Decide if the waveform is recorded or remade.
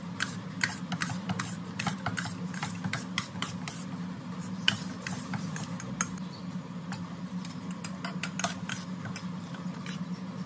recorded